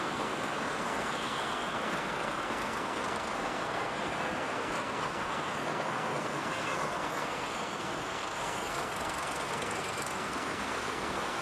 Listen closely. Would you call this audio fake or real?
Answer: fake